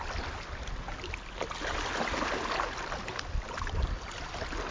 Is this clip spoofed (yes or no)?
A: no